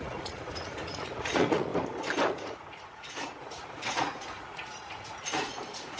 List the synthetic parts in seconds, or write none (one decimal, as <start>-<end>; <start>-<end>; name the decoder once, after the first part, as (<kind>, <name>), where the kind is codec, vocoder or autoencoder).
0.0-1.7 (vocoder, Vocos); 2.3-6.0